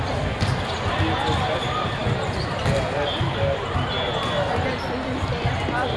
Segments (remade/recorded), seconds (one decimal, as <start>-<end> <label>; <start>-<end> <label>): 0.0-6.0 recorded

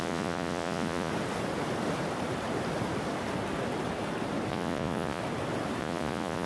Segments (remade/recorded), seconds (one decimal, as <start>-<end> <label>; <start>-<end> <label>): 0.0-1.1 remade; 1.1-4.5 recorded; 4.5-5.2 remade; 5.2-5.8 recorded; 5.8-6.5 remade

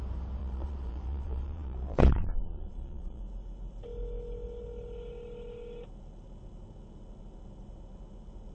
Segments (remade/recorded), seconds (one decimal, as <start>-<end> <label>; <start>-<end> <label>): 0.0-0.4 recorded; 0.4-3.2 remade; 3.2-8.5 recorded

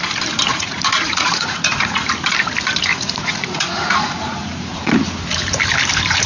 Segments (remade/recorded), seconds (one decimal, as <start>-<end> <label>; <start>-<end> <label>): 0.0-0.5 recorded; 0.5-2.0 remade; 2.0-2.9 recorded; 2.9-4.9 remade; 4.9-6.3 recorded

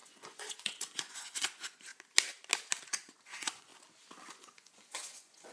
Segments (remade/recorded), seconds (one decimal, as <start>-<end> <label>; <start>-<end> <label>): 0.0-1.9 remade; 1.9-2.8 recorded; 2.8-3.7 remade; 3.7-4.3 recorded; 4.3-5.5 remade

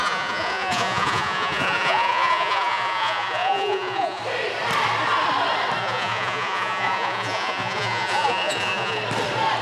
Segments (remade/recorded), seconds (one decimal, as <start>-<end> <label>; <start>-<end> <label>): 0.0-4.2 remade; 4.2-5.8 recorded; 5.8-9.0 remade; 9.0-9.6 recorded